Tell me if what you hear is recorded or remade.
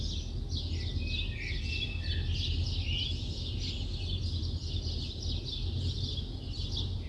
recorded